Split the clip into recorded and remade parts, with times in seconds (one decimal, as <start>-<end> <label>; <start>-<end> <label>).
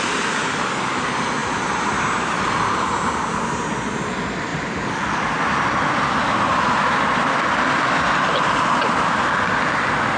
0.0-10.2 recorded